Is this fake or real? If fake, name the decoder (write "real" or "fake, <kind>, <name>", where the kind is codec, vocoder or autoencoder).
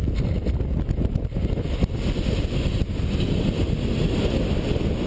real